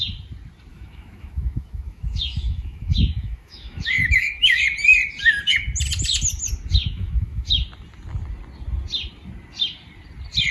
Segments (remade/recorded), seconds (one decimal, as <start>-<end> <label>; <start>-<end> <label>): 0.0-0.7 recorded; 0.7-4.6 remade; 4.6-6.7 recorded; 6.7-7.6 remade; 7.6-10.5 recorded